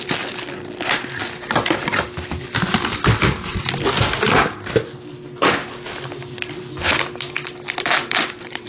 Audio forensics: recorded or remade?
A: recorded